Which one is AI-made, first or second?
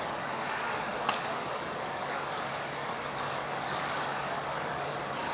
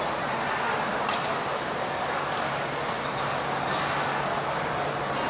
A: first